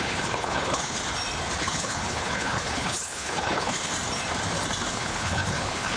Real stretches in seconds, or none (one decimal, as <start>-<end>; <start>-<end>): 1.0-1.6; 3.9-4.9